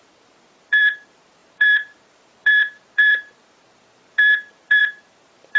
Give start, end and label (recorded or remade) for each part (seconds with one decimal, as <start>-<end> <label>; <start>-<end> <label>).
0.0-5.6 remade